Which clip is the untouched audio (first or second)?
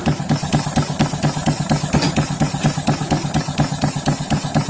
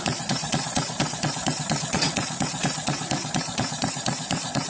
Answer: first